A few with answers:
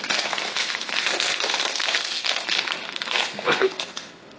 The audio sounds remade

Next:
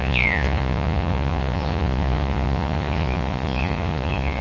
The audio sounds remade